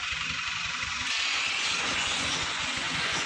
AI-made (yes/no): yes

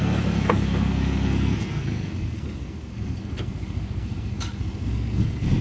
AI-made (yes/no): yes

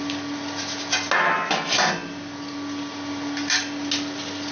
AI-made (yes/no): no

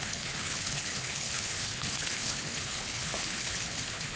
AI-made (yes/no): yes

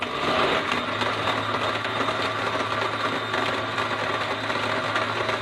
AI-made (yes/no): no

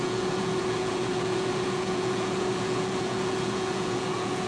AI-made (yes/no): yes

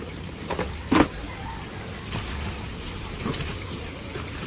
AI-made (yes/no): no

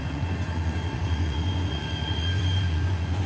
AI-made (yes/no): yes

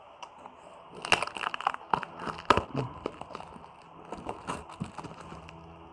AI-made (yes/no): no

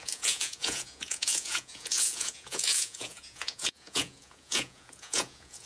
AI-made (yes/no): yes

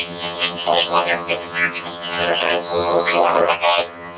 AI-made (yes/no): yes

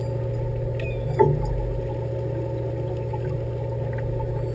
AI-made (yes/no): no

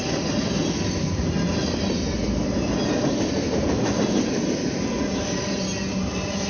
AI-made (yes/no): no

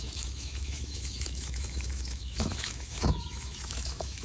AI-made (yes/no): yes